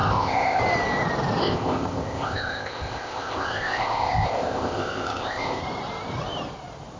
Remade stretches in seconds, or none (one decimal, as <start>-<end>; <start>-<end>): 0.0-0.6; 1.4-5.6